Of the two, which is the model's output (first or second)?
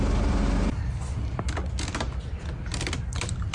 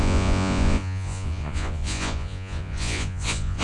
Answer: second